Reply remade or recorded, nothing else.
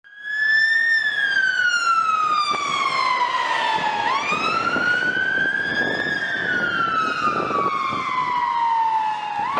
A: recorded